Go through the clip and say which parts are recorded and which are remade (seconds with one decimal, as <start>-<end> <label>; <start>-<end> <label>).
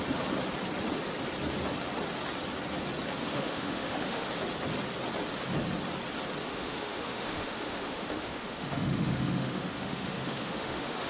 0.0-3.2 recorded; 3.2-4.3 remade; 4.3-6.4 recorded; 6.4-11.1 remade